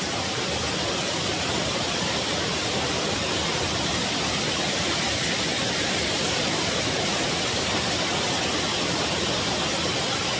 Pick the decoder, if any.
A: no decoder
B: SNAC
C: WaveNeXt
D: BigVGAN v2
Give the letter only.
D